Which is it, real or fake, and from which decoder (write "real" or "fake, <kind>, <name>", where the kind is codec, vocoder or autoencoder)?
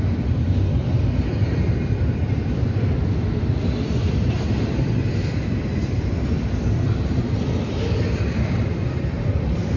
fake, vocoder, BigVGAN v2